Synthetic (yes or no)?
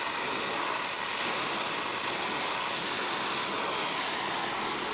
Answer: no